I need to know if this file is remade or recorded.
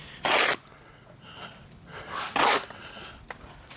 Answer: recorded